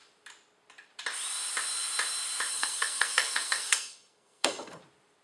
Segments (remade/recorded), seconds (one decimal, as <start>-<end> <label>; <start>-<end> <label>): 0.0-2.5 recorded; 2.5-4.8 remade; 4.8-5.2 recorded